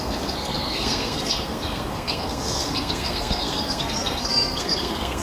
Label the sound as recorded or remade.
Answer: remade